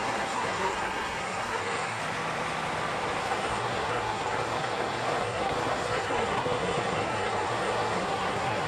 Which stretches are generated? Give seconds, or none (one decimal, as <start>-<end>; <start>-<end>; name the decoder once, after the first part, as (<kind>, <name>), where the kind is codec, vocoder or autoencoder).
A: 0.0-2.0 (codec, SNAC); 3.2-8.7

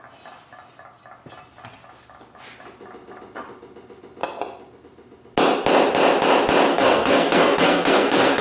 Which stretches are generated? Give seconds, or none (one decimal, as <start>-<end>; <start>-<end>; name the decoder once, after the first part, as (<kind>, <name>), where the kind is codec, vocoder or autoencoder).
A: 6.7-8.4 (codec, SNAC)

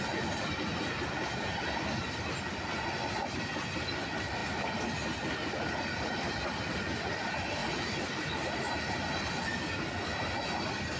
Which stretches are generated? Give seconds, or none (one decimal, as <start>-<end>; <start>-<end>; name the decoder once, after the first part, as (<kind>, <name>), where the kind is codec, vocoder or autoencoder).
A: none